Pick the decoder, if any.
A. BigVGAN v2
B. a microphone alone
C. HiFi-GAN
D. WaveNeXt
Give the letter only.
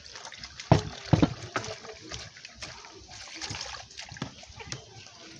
B